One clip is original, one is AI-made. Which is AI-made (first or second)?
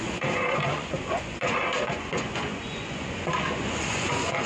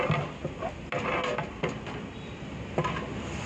first